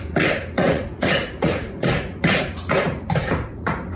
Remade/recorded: remade